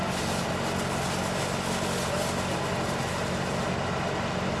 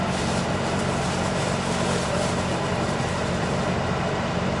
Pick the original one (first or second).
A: first